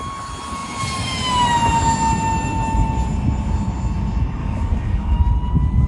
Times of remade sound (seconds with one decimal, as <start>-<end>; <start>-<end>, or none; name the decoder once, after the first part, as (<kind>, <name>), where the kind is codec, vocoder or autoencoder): 4.4-5.2 (codec, DAC)